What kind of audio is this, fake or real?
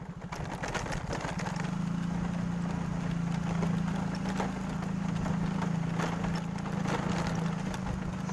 real